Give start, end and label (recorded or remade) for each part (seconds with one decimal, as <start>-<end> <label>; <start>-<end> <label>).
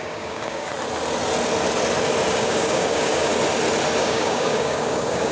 0.0-0.7 remade; 0.7-2.3 recorded; 2.3-3.3 remade; 3.3-4.0 recorded; 4.0-5.3 remade